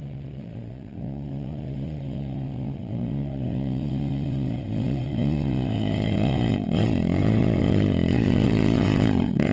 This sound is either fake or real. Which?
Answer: fake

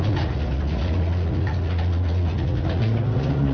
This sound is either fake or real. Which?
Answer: fake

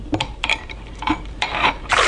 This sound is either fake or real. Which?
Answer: fake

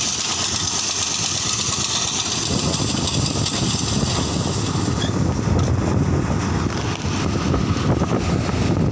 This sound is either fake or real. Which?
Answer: real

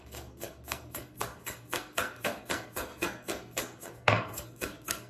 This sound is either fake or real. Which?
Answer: fake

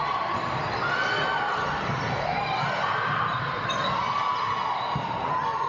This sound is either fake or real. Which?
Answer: real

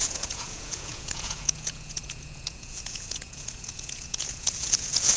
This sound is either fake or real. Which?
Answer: fake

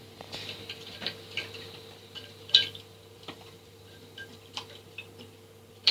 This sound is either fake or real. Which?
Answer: fake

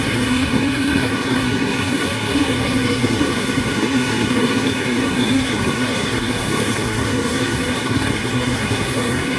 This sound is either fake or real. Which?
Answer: fake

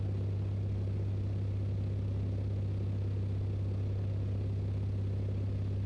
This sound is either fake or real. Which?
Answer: real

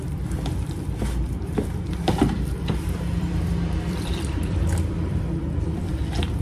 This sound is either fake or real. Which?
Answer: fake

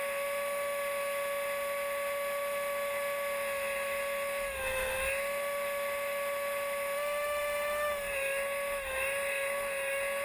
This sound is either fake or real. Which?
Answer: fake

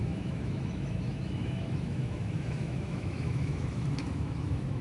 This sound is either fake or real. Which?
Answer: fake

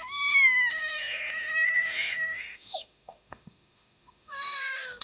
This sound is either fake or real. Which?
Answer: fake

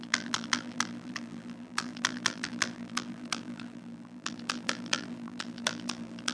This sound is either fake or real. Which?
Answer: fake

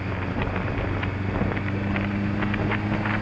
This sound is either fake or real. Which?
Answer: real